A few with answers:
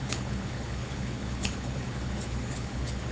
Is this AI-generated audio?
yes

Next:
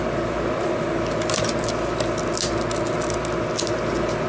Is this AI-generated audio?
no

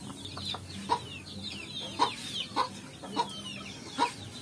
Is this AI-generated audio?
no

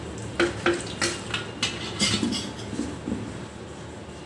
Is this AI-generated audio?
no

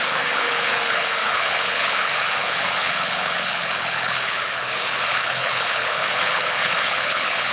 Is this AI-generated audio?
yes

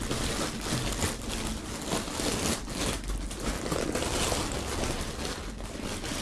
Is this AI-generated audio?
no